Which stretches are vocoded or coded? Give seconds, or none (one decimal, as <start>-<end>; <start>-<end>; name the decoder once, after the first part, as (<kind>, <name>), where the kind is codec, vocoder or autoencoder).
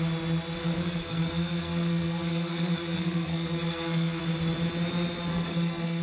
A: 0.6-4.2 (codec, SNAC); 5.3-6.0